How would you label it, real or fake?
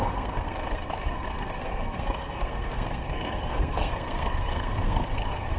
fake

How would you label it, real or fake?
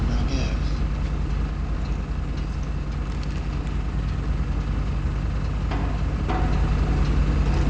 real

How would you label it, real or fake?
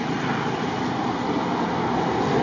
real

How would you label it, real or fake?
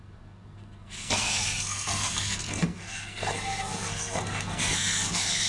fake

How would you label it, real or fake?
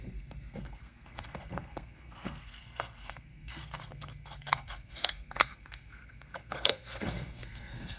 fake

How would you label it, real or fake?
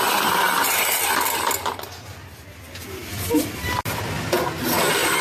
real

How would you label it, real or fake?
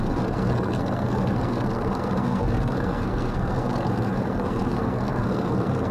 fake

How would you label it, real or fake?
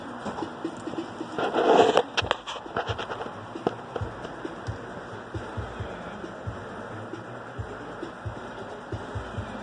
real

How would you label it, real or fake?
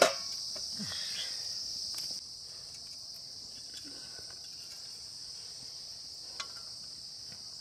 real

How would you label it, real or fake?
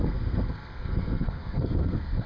fake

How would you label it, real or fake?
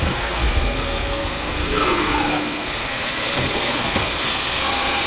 fake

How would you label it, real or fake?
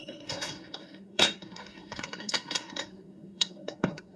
fake